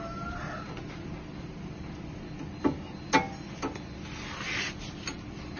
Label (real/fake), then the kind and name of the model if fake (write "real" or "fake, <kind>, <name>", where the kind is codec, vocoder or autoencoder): real